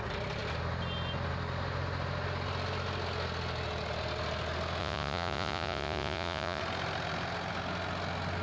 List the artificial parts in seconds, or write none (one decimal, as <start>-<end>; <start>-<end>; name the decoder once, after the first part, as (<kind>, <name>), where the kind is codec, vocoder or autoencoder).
4.8-6.6 (vocoder, Vocos)